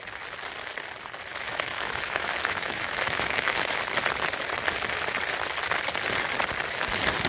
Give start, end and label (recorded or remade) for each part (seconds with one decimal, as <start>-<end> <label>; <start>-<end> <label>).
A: 0.0-1.3 recorded; 1.3-3.8 remade; 3.8-7.3 recorded